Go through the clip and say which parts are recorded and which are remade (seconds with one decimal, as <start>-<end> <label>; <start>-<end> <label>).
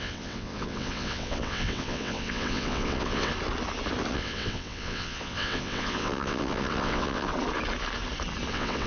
0.0-3.3 remade; 3.3-4.1 recorded; 4.1-7.3 remade; 7.3-8.5 recorded; 8.5-8.9 remade